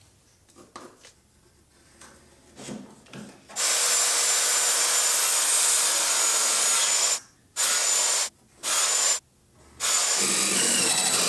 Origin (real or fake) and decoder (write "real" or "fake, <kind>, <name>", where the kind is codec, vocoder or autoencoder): real